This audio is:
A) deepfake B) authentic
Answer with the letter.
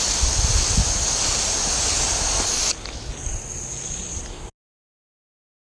B